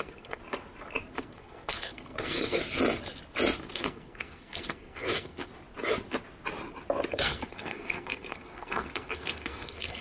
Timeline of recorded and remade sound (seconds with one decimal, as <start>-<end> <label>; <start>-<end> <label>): 0.0-0.4 remade; 0.4-1.1 recorded; 1.1-2.6 remade; 2.6-3.7 recorded; 3.7-5.5 remade; 5.5-7.1 recorded; 7.1-10.0 remade